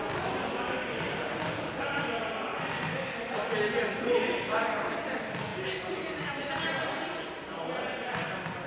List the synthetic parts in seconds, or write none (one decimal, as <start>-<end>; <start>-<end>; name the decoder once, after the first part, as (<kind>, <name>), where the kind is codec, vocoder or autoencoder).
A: 5.5-6.5 (vocoder, BigVGAN v2)